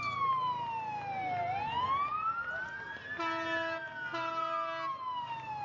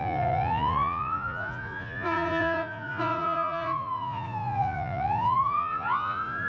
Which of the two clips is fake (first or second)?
second